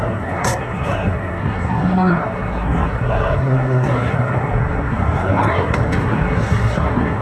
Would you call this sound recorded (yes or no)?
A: no